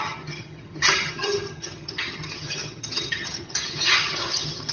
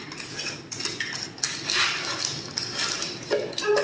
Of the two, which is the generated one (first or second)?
first